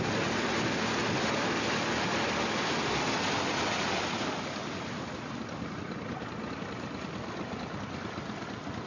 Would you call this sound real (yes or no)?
yes